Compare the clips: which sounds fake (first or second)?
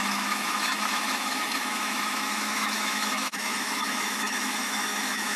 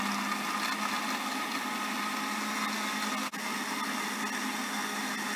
first